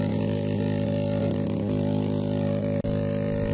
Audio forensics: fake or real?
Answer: real